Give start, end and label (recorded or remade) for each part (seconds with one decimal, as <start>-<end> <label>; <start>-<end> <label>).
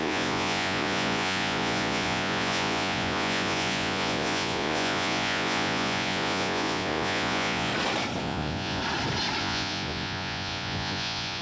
0.0-7.7 remade; 7.7-8.2 recorded; 8.2-8.8 remade; 8.8-9.4 recorded; 9.4-11.4 remade